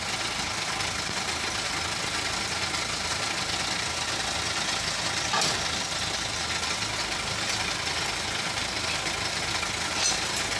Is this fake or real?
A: real